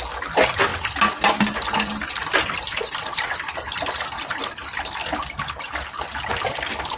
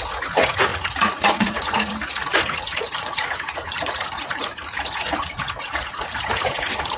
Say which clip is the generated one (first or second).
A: second